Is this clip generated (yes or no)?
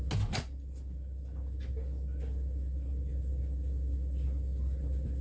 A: no